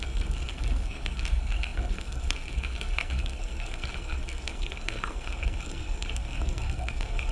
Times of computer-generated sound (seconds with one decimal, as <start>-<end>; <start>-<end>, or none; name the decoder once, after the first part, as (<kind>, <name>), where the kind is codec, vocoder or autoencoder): 0.0-7.3 (codec, SNAC)